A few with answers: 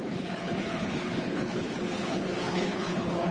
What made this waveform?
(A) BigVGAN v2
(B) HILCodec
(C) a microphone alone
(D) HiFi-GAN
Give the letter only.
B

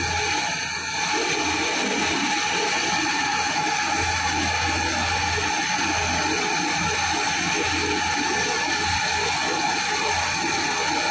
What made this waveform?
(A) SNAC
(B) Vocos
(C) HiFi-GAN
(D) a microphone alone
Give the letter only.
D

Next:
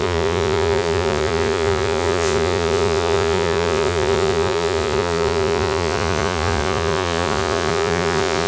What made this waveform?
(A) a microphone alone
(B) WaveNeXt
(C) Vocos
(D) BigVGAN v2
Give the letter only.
C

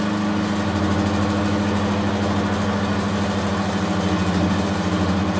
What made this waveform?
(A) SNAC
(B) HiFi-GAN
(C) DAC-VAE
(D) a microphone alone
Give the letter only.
D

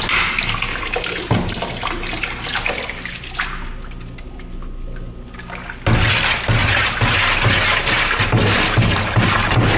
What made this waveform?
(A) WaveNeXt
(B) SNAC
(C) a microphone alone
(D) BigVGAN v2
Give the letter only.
C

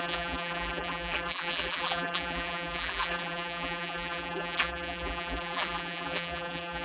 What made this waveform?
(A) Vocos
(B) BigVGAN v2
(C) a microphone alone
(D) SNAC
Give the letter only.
B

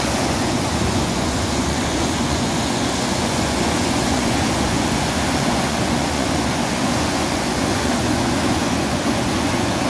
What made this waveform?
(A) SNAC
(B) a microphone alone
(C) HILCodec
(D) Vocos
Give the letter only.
D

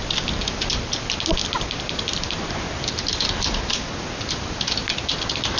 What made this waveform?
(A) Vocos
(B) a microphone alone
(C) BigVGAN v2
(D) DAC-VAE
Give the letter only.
B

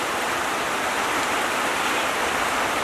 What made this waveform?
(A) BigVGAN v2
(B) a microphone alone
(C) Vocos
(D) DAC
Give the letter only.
B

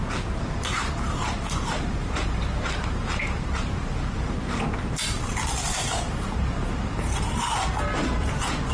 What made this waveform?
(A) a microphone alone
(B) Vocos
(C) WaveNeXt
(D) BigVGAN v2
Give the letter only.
D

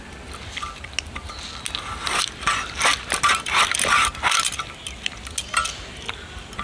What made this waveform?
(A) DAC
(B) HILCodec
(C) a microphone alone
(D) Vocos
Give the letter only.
C